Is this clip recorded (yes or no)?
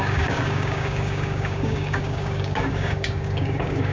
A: no